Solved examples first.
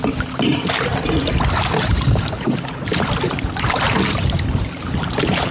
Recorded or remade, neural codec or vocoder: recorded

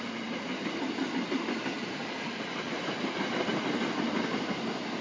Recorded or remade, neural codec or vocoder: recorded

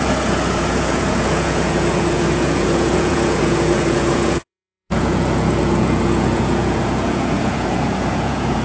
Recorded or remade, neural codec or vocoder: remade, vocoder, Vocos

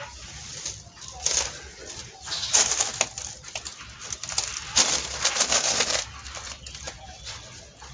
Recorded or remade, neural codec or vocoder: recorded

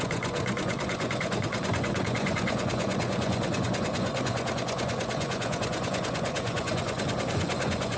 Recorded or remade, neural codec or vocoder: remade, vocoder, Vocos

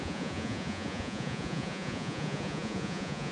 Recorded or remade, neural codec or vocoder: remade, vocoder, Vocos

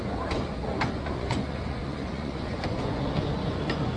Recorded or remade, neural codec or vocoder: remade, vocoder, Vocos